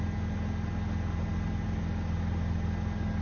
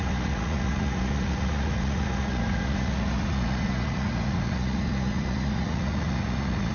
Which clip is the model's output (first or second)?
second